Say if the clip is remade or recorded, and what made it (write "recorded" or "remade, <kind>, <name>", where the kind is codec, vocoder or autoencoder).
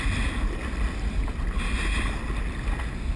recorded